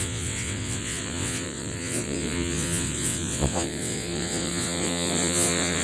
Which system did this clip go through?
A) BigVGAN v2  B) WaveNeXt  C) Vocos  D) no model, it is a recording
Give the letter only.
B